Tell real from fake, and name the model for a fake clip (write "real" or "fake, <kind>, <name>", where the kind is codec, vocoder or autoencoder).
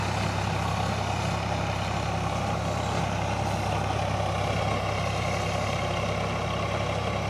real